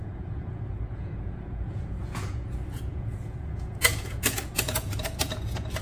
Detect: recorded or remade remade